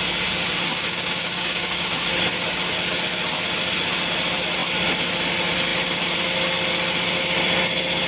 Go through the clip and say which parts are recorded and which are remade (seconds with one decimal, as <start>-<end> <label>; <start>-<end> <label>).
0.0-0.7 recorded; 0.7-1.9 remade; 1.9-8.1 recorded